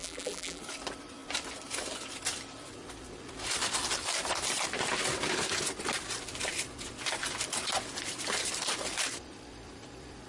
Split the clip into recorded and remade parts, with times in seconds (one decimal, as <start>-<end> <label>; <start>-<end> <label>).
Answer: 0.0-0.6 remade; 0.6-10.3 recorded